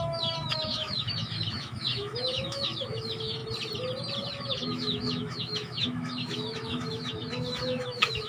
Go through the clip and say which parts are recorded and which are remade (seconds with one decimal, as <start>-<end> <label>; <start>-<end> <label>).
0.0-3.4 remade; 3.4-4.4 recorded; 4.4-8.3 remade